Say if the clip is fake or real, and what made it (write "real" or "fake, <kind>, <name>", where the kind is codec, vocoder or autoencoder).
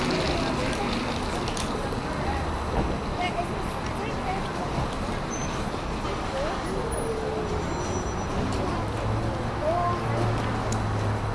real